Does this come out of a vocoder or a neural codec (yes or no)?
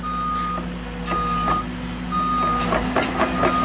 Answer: no